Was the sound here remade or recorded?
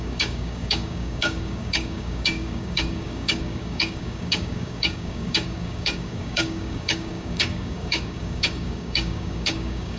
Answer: remade